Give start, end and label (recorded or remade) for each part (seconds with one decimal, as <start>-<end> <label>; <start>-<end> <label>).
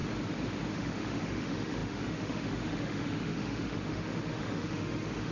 0.0-0.7 recorded; 0.7-5.3 remade